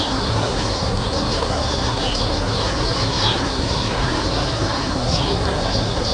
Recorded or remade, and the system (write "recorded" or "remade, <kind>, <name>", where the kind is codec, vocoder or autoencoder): remade, codec, SNAC